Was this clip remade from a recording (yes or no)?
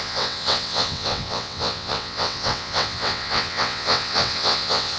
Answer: yes